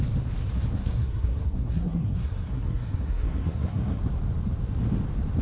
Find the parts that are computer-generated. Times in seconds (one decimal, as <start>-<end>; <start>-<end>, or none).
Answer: 0.8-4.0